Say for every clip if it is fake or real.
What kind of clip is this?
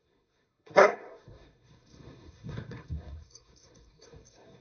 fake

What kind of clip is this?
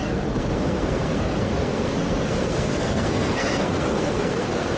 fake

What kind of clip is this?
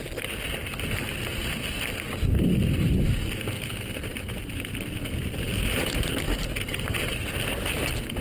real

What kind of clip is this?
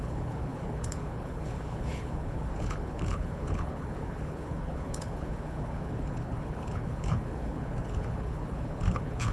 fake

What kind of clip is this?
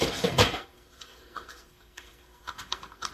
fake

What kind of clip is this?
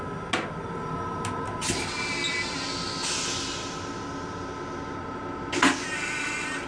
real